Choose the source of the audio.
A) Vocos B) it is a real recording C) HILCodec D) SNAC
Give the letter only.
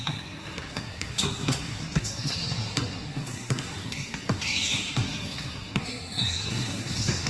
D